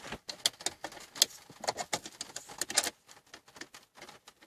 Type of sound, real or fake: real